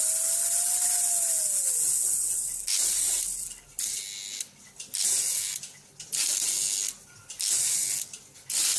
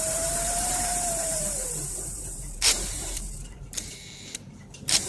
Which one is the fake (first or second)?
second